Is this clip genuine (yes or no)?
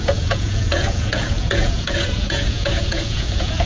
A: no